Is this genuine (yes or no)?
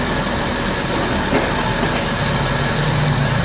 yes